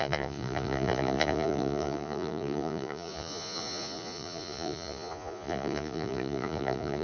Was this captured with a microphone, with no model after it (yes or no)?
no